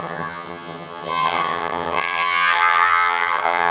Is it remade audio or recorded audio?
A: remade